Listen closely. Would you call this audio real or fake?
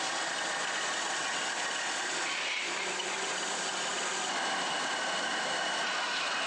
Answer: real